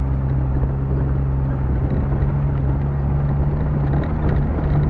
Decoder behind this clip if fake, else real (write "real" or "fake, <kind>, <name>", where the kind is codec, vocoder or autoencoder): real